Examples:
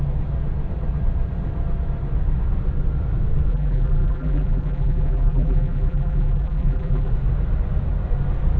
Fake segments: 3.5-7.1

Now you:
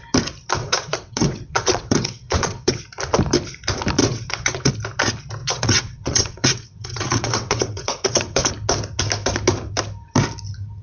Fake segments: 0.6-2.8; 4.0-4.7; 5.4-8.5